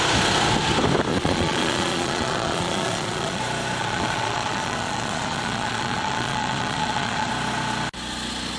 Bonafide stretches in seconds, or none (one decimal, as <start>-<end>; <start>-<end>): 0.0-1.1; 3.4-3.8; 7.3-8.6